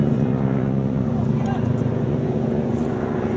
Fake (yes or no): yes